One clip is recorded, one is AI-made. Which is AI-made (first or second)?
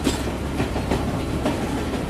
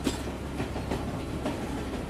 first